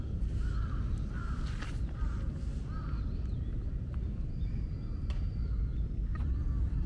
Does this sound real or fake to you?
real